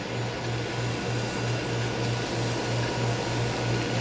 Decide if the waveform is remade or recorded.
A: recorded